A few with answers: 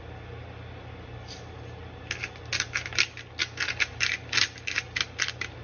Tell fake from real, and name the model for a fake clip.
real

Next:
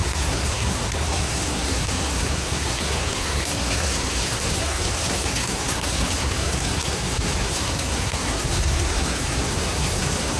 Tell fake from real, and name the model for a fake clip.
fake, codec, SNAC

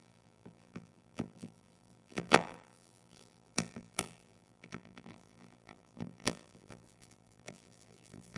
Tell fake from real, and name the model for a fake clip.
fake, vocoder, BigVGAN v2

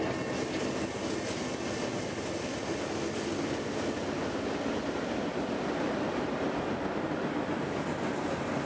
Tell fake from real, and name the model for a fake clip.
real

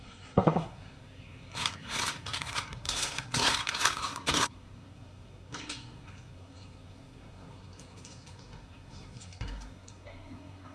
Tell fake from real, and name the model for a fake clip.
fake, codec, SNAC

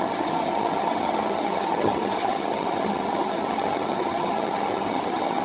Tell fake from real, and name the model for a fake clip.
fake, vocoder, HiFi-GAN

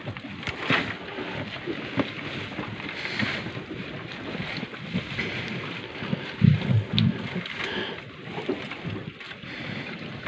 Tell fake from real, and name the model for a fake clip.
real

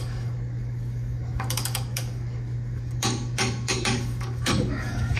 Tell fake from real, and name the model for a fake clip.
fake, codec, DAC